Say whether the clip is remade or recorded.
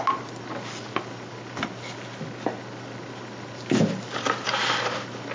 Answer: recorded